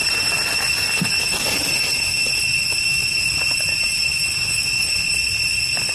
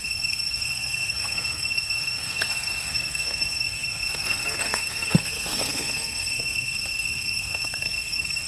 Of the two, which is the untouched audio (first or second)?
first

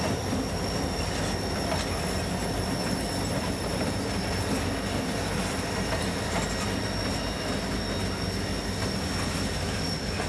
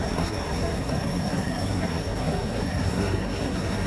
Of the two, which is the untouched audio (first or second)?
first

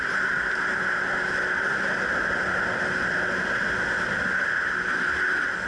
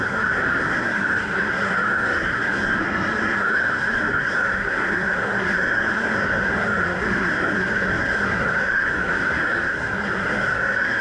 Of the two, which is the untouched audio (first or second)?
first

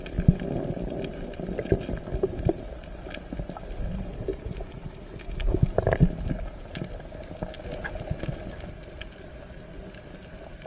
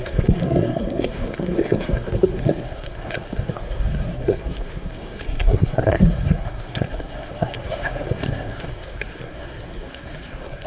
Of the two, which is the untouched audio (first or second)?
first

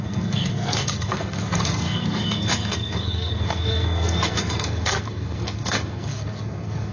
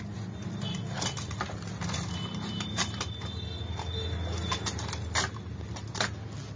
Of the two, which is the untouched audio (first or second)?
second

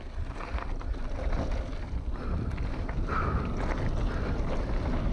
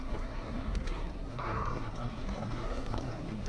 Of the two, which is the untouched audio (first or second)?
first